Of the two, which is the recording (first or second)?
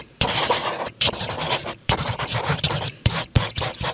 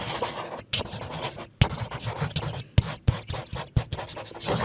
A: second